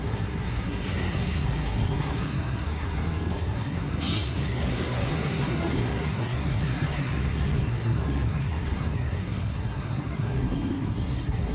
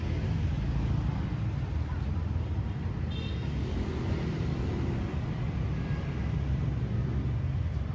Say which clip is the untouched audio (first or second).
second